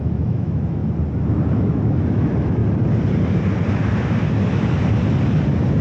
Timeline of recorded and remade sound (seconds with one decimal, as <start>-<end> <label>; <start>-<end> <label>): 0.0-0.8 remade; 0.8-1.5 recorded; 1.5-2.6 remade; 2.6-5.8 recorded

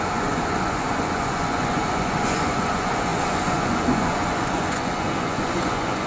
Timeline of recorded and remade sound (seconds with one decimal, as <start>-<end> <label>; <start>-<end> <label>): 0.0-6.1 remade

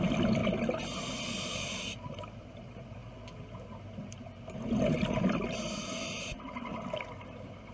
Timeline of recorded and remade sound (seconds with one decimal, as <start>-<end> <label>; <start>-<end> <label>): 0.0-7.7 recorded